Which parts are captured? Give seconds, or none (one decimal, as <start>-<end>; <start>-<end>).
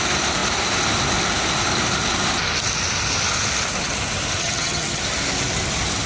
0.0-4.4; 5.0-6.1